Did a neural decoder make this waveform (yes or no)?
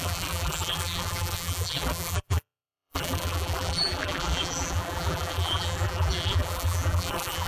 yes